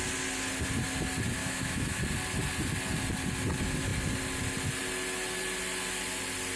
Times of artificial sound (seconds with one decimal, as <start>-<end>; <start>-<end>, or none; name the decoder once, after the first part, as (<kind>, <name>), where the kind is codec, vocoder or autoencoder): 1.4-2.0 (autoencoder, DAC-VAE)